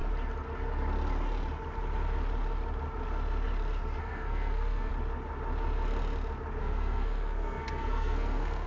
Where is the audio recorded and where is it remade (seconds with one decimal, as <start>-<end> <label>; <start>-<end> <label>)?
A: 0.0-4.0 recorded; 4.0-4.9 remade; 4.9-6.6 recorded; 6.6-8.7 remade